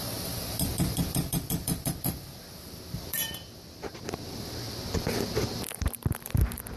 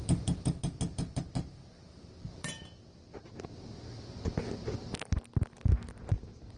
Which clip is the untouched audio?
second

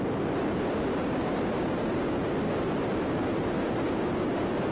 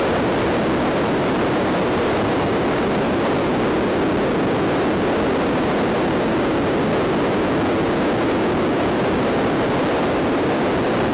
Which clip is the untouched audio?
second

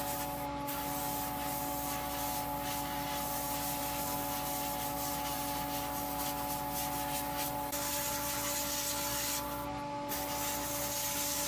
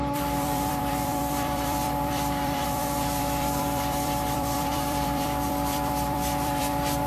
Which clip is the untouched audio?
first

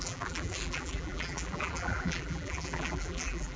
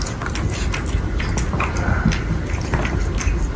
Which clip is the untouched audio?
second